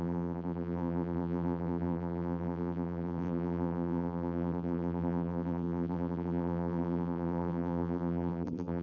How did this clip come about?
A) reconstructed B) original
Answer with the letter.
A